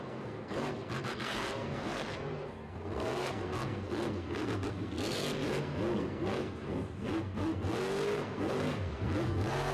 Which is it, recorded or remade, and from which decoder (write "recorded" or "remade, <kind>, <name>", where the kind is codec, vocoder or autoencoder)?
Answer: remade, codec, SNAC